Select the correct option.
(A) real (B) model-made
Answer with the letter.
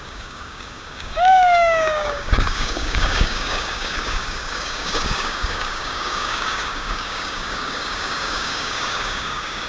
B